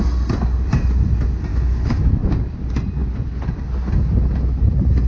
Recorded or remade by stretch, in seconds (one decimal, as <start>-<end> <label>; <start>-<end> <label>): 0.0-1.5 recorded; 1.5-2.1 remade; 2.1-5.1 recorded